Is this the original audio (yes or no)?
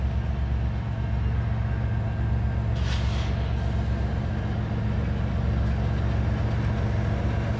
yes